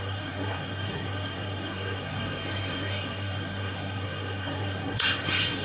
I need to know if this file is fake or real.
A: fake